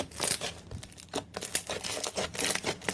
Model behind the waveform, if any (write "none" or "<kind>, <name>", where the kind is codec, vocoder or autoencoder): none